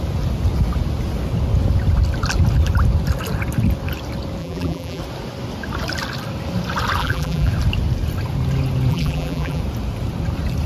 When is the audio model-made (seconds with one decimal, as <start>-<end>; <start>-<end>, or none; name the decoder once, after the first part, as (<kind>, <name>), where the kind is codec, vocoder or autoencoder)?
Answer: 4.4-5.0 (vocoder, BigVGAN v2); 7.0-7.5; 8.9-9.6